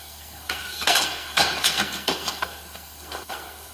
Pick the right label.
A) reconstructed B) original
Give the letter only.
A